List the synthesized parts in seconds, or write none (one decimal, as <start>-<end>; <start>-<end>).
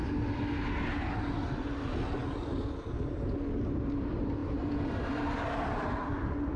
4.4-6.6